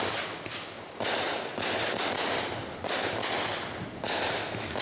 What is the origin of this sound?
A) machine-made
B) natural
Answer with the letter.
B